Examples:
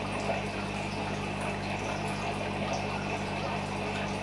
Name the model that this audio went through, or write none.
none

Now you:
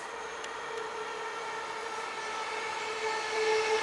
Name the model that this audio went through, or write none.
none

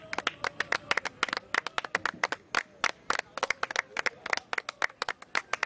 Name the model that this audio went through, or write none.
none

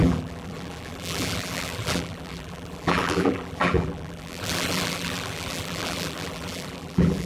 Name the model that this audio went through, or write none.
vocoder, BigVGAN v2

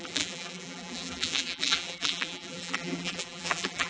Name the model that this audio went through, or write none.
vocoder, BigVGAN v2